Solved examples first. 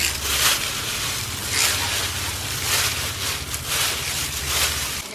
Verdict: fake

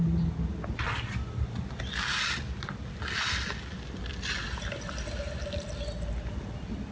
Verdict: real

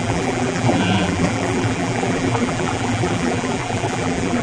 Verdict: fake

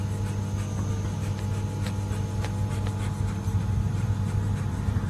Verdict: real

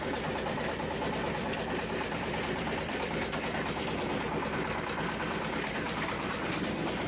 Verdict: fake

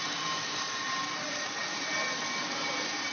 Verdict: fake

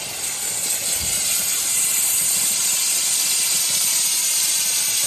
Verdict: real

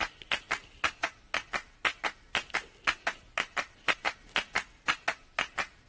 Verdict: real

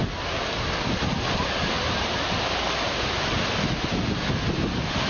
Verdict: real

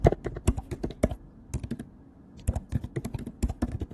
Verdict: real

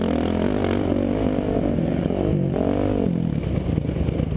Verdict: real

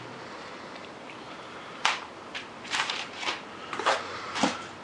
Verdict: fake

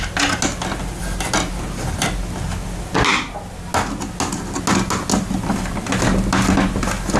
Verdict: real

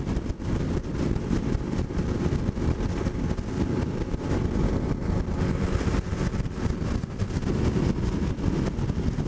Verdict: fake